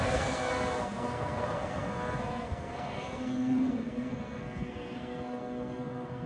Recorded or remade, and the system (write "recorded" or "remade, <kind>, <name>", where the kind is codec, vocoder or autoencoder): remade, codec, SNAC